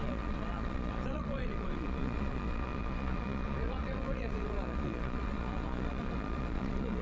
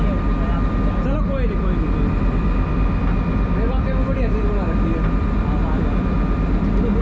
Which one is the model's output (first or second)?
first